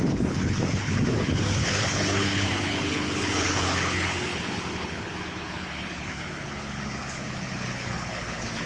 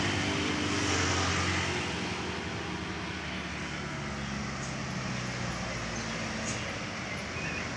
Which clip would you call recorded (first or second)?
second